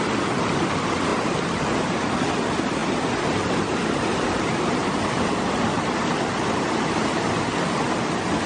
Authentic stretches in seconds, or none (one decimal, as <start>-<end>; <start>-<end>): 0.0-8.5